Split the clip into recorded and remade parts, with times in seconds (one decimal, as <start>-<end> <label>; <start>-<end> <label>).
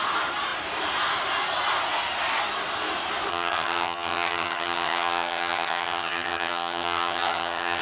0.0-3.3 recorded; 3.3-7.8 remade